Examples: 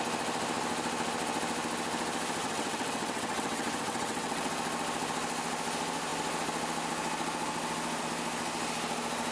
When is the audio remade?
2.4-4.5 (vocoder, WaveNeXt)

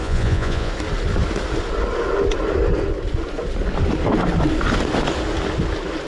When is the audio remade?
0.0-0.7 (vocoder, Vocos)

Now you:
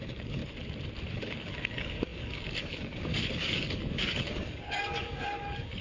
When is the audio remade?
0.0-0.4 (codec, DAC); 1.1-5.8